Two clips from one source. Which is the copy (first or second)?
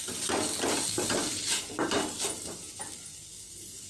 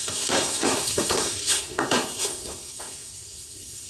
second